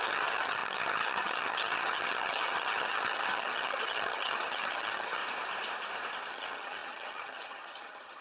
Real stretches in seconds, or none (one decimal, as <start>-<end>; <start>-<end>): 5.2-6.3